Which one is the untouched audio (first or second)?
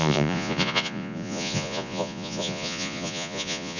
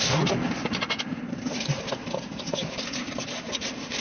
second